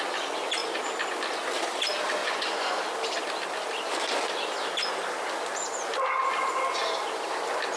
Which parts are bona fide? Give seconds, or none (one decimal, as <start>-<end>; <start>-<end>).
0.0-2.2; 2.8-7.8